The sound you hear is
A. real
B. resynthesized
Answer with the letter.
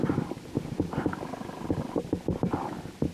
A